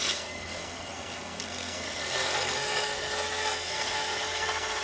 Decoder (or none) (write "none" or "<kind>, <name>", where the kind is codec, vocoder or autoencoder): codec, SNAC